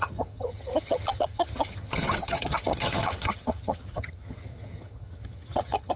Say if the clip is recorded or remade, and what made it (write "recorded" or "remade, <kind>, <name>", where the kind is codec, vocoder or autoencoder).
remade, vocoder, HiFi-GAN